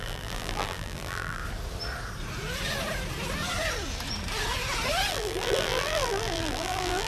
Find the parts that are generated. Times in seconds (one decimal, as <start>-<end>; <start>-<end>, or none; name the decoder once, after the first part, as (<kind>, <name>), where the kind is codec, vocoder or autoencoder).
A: 0.0-1.4 (vocoder, BigVGAN v2); 5.1-7.1